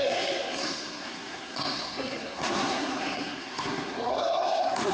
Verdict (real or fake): fake